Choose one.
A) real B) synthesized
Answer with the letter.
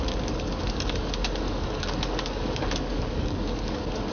B